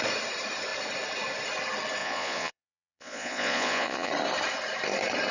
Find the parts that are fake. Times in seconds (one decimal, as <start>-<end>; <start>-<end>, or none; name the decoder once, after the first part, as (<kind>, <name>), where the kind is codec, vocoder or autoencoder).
2.0-4.1 (vocoder, Vocos)